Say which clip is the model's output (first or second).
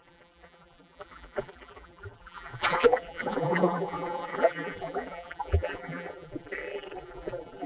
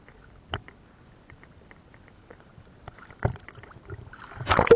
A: first